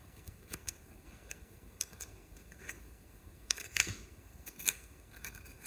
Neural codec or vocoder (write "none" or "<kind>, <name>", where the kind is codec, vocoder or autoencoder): codec, SNAC